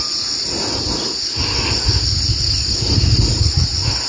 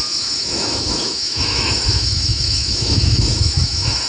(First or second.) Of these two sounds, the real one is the first